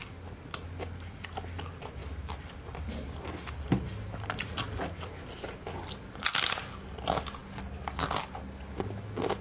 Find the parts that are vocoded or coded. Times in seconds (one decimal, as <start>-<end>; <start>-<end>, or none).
none